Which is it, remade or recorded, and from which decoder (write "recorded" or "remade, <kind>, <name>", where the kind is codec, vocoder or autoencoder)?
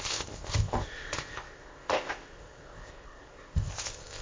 remade, codec, ZipCodec